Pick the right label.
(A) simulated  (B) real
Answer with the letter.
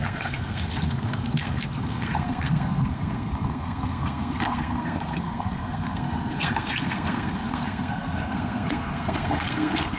A